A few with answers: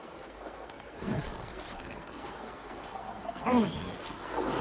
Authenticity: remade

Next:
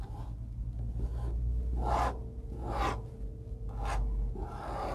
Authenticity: recorded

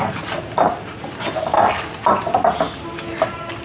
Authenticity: recorded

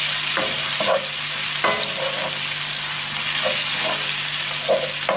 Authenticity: recorded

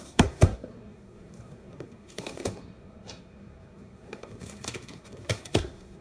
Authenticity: remade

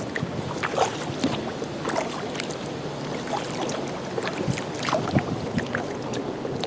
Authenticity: recorded